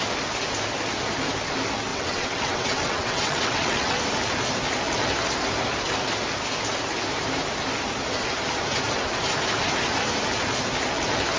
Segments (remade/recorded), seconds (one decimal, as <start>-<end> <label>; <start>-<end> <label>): 0.0-1.9 recorded; 1.9-4.0 remade; 4.0-11.4 recorded